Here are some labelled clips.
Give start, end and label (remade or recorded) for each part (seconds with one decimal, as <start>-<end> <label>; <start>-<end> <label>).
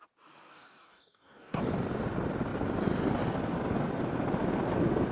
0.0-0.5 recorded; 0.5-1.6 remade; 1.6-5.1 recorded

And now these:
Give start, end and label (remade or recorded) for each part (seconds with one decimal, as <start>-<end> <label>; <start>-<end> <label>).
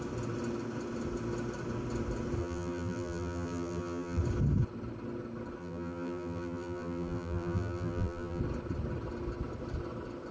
0.0-2.4 recorded; 2.4-4.2 remade; 4.2-5.6 recorded; 5.6-8.4 remade; 8.4-10.3 recorded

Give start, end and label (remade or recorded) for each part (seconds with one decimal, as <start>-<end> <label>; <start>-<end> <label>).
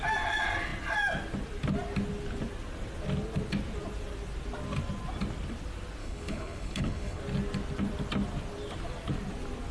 0.0-6.0 recorded; 6.0-7.2 remade; 7.2-9.7 recorded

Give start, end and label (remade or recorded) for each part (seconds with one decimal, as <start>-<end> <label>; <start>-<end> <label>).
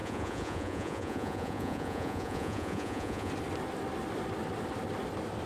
0.0-3.3 remade; 3.3-5.5 recorded